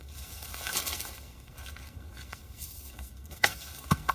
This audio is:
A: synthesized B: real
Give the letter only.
A